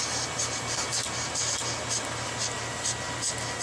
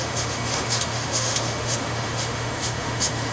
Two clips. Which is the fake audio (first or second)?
second